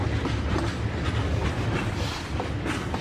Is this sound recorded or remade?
recorded